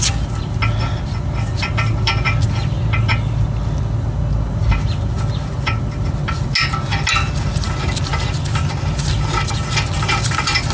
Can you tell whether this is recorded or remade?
recorded